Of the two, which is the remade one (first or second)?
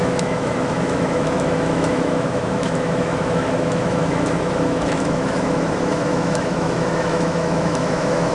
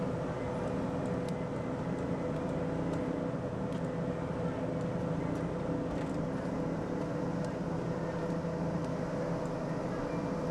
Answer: first